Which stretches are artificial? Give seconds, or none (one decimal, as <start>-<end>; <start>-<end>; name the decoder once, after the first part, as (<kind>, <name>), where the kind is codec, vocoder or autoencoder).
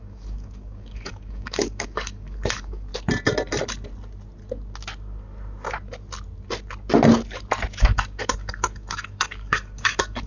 0.0-2.9 (codec, DAC); 7.8-10.3